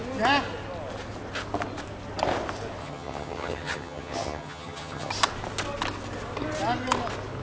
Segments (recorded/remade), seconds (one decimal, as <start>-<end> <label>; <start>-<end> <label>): 0.0-2.8 recorded; 2.8-5.1 remade; 5.1-7.4 recorded